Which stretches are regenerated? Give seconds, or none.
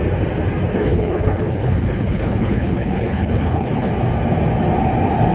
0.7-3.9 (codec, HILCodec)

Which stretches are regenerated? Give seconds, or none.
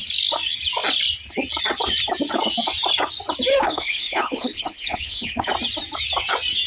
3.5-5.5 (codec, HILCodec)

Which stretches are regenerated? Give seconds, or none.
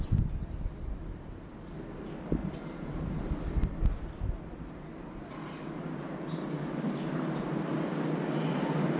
none